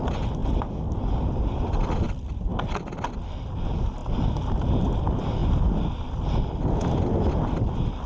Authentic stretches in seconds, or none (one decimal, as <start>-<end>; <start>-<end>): 0.0-8.1